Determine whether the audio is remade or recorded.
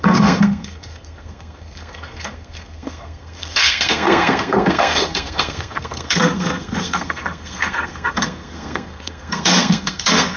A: remade